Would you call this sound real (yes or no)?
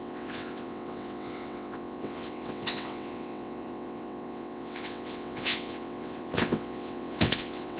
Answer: no